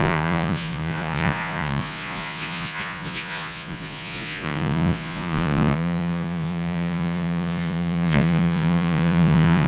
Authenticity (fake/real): fake